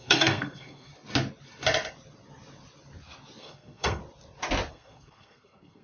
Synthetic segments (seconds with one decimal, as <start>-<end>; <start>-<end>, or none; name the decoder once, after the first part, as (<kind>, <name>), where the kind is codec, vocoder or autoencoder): 0.0-0.9 (codec, SNAC); 3.4-4.0; 4.7-5.8